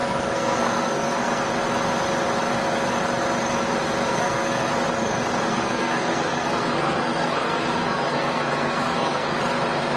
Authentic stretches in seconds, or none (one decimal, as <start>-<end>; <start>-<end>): 1.4-4.1; 4.7-5.5; 9.4-10.0

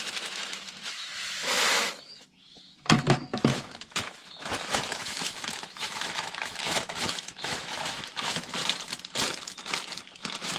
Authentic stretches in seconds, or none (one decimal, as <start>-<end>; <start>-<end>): 8.6-10.2

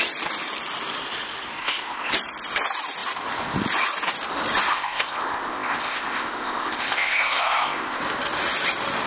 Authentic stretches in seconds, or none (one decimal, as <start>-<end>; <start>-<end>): 0.0-1.6; 2.1-4.7; 8.0-9.1

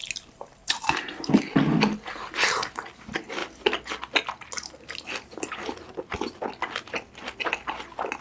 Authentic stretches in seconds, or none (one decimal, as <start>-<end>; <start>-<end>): 0.0-8.2

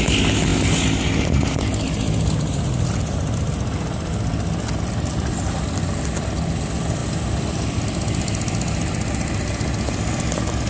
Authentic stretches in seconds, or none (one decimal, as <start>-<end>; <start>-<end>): 0.0-10.7

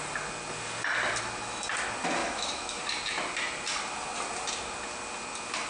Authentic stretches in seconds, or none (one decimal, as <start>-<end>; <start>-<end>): 0.0-2.2; 2.8-5.7